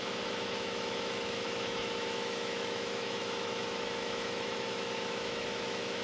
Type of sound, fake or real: fake